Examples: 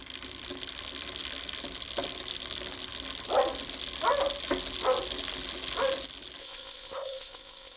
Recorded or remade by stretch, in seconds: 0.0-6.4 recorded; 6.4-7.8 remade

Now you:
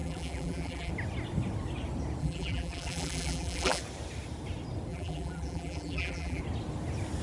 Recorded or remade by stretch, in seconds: 0.0-0.9 remade; 0.9-2.2 recorded; 2.2-3.8 remade; 3.8-4.9 recorded; 4.9-6.4 remade; 6.4-7.2 recorded

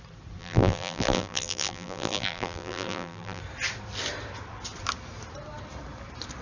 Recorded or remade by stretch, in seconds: 0.0-0.4 recorded; 0.4-3.4 remade; 3.4-6.4 recorded

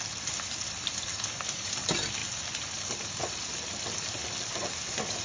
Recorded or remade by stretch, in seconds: 0.0-1.1 recorded; 1.1-1.6 remade; 1.6-5.2 recorded

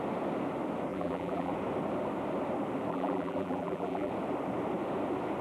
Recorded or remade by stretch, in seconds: 0.0-0.9 recorded; 0.9-1.5 remade; 1.5-2.9 recorded; 2.9-4.1 remade; 4.1-5.4 recorded

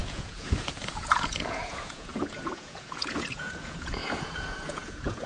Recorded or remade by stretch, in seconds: 0.0-5.3 remade